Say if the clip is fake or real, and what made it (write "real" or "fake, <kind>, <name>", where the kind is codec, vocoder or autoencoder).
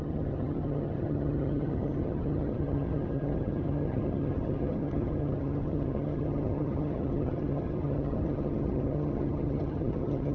fake, vocoder, HiFi-GAN